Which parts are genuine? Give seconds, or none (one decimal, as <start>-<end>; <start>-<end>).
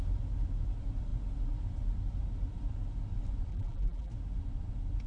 0.0-3.5; 4.1-5.1